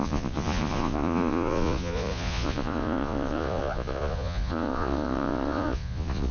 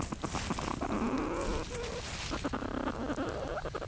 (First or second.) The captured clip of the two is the second